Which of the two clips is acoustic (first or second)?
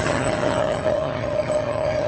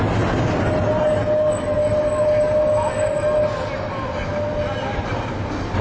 second